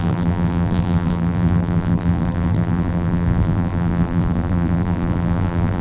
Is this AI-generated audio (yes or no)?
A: yes